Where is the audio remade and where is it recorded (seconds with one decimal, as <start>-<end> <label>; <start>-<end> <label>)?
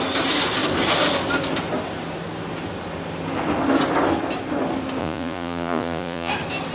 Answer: 0.0-5.0 recorded; 5.0-6.3 remade; 6.3-6.7 recorded